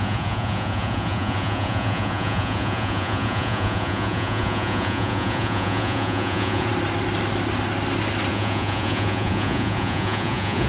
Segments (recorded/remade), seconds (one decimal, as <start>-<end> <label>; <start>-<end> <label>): 0.0-6.7 remade; 6.7-8.3 recorded; 8.3-10.7 remade